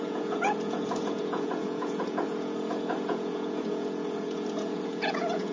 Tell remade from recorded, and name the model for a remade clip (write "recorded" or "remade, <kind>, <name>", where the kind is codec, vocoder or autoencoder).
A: remade, vocoder, Vocos